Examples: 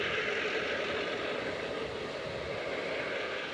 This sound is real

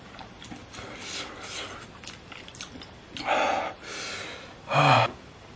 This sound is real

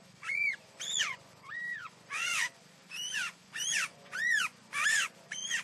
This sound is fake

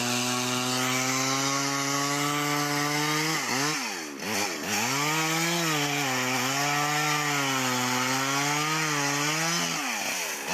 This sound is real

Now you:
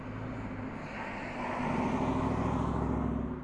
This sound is real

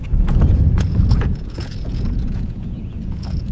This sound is fake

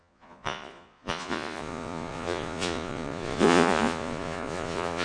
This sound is fake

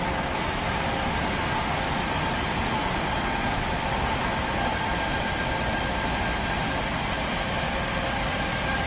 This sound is real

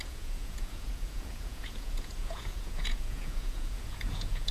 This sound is fake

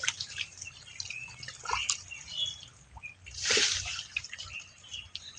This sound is real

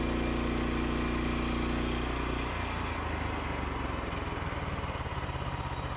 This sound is real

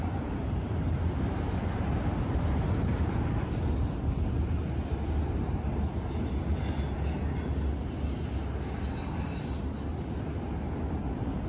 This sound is real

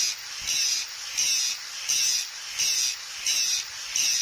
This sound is real